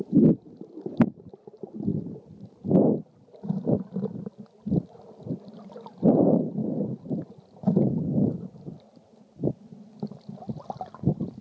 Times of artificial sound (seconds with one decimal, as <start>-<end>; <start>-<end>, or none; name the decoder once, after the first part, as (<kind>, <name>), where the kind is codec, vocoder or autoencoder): none